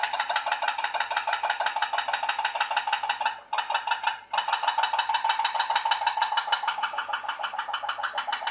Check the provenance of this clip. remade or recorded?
recorded